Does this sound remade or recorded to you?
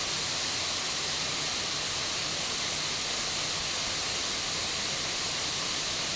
recorded